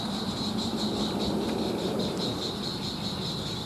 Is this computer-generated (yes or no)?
no